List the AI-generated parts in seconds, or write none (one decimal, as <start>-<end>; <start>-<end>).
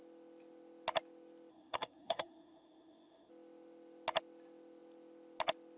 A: 1.5-3.3